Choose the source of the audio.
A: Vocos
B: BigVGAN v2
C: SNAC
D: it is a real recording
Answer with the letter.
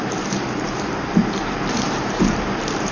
B